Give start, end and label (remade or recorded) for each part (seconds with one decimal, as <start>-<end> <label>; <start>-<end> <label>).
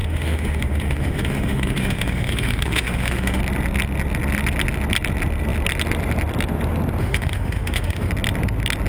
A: 0.0-3.4 remade; 3.4-7.0 recorded; 7.0-8.1 remade; 8.1-8.9 recorded